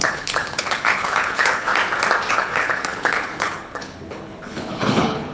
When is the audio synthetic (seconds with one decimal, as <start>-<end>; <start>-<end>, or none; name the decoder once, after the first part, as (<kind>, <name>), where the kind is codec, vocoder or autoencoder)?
0.0-1.7 (codec, HILCodec); 2.3-5.3